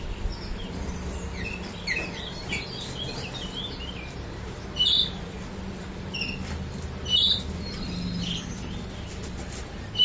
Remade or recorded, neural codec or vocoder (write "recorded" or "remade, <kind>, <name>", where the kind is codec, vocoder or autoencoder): recorded